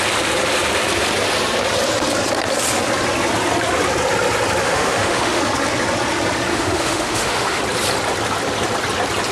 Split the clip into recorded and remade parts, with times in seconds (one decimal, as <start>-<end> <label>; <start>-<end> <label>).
0.0-4.6 recorded; 4.6-5.4 remade; 5.4-6.5 recorded; 6.5-7.6 remade; 7.6-9.3 recorded